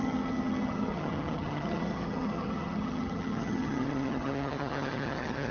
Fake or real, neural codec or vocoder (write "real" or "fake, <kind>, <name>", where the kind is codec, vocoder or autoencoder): fake, vocoder, HiFi-GAN